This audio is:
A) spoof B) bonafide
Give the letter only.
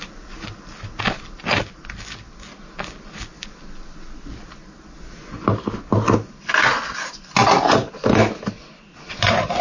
B